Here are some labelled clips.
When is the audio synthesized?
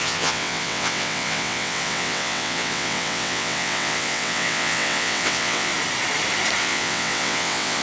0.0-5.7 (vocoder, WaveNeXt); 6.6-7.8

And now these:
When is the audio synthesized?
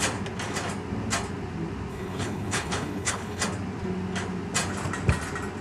1.9-3.4 (codec, HILCodec)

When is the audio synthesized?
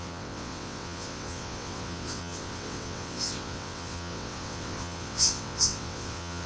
0.0-6.5 (vocoder, WaveNeXt)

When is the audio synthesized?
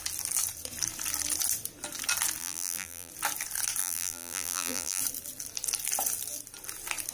2.4-3.1 (vocoder, BigVGAN v2); 3.8-5.0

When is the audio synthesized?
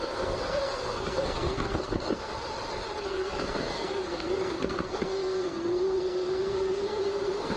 0.0-2.3 (codec, SNAC); 3.1-7.6